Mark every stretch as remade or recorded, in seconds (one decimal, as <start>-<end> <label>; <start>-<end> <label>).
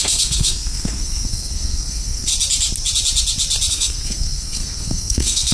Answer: 0.0-2.3 remade; 2.3-3.7 recorded; 3.7-5.5 remade